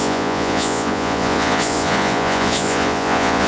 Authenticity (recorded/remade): remade